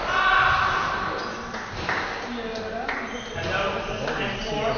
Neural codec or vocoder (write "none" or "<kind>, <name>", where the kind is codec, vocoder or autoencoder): none